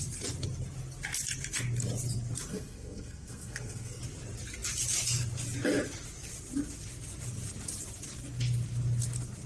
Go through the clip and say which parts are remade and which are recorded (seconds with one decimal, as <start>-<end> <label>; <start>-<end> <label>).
0.0-2.5 recorded; 2.5-4.0 remade; 4.0-9.5 recorded